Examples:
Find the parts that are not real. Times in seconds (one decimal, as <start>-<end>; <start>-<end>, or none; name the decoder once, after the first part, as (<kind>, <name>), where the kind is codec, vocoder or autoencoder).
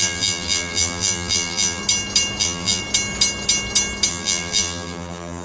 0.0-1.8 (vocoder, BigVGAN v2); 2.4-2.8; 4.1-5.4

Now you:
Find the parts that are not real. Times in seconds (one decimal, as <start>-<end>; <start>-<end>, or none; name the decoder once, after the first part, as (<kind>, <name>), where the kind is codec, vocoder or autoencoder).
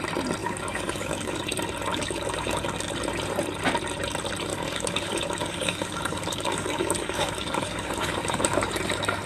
0.4-1.4 (codec, DAC); 1.9-2.9; 4.5-8.7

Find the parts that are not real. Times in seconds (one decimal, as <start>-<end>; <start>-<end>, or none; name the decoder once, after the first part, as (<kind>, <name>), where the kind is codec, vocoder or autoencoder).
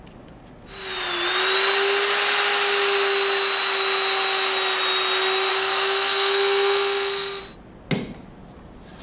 5.5-7.4 (codec, SNAC)